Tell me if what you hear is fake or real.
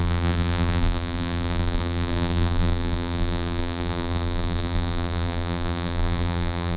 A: fake